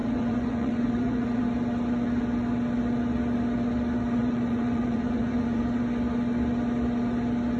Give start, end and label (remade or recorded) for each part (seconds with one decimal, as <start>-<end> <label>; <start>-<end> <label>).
0.0-1.4 remade; 1.4-4.2 recorded; 4.2-5.6 remade; 5.6-7.6 recorded